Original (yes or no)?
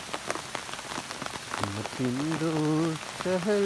yes